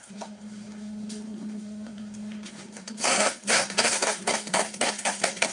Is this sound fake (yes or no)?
yes